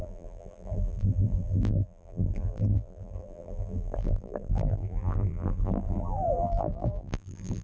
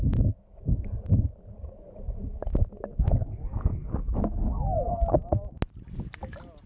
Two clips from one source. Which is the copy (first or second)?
first